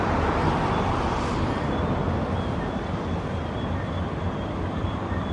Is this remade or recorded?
remade